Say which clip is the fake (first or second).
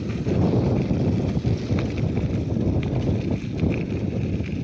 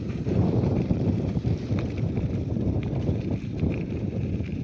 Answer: second